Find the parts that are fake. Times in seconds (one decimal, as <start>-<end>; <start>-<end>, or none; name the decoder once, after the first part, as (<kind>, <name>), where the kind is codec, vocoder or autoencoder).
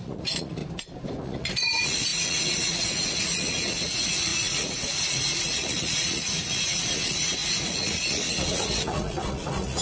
0.0-0.6 (vocoder, Vocos); 1.2-9.8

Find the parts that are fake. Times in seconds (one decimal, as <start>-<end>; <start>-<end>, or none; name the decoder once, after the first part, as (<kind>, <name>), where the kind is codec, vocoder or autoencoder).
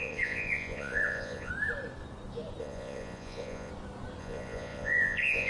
0.0-1.5 (vocoder, Vocos); 2.6-3.7; 4.2-5.5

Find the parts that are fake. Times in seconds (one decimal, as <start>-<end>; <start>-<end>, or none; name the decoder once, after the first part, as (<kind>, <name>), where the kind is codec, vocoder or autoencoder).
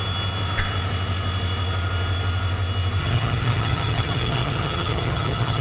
3.0-5.6 (vocoder, HiFi-GAN)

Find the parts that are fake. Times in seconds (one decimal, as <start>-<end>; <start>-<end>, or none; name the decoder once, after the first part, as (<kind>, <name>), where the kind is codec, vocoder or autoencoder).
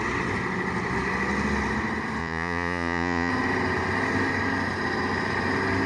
2.2-3.3 (vocoder, Vocos)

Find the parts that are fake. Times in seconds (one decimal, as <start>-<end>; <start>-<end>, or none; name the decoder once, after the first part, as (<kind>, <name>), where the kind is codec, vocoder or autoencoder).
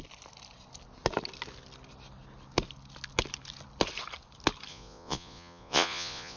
4.7-6.4 (vocoder, Vocos)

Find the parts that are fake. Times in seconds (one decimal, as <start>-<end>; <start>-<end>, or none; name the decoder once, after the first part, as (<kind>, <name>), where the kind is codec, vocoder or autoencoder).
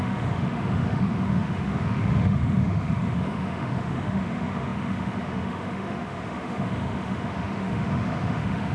0.0-8.7 (autoencoder, DAC-VAE)